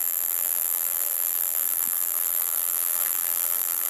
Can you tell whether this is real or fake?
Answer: fake